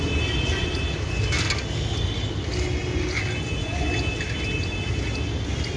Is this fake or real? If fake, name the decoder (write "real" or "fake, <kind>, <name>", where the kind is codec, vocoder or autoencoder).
real